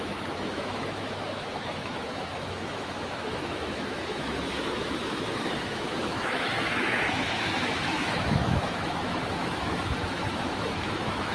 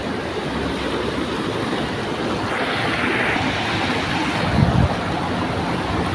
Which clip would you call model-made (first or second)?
first